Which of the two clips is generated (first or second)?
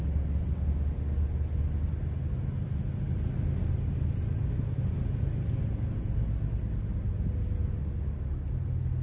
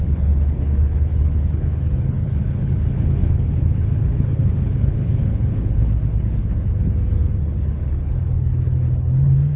second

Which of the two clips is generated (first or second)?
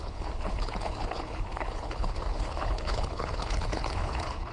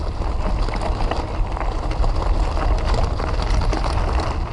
first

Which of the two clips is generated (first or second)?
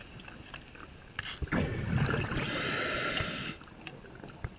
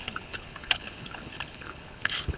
second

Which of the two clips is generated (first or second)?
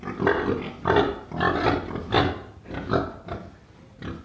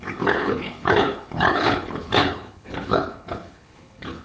second